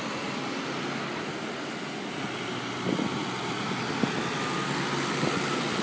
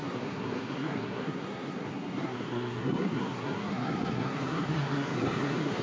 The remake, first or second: second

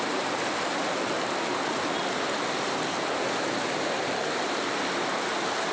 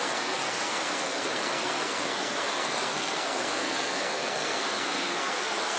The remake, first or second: second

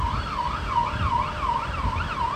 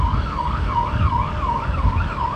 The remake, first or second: second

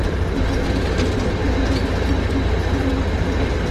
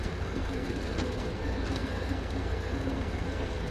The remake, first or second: second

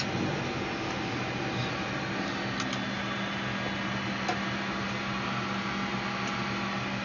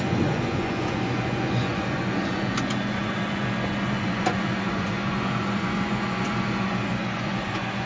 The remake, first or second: second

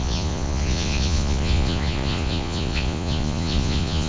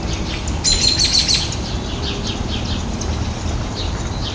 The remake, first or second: first